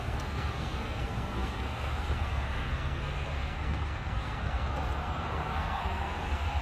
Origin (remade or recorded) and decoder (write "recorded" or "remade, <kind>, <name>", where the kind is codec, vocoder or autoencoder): remade, codec, SNAC